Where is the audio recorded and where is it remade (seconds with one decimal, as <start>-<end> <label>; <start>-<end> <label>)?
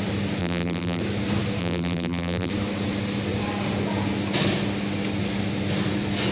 0.0-0.4 recorded; 0.4-1.0 remade; 1.0-1.6 recorded; 1.6-2.5 remade; 2.5-6.3 recorded